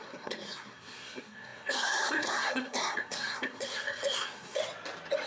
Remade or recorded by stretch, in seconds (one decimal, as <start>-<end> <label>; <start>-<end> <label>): 0.0-4.6 remade; 4.6-5.3 recorded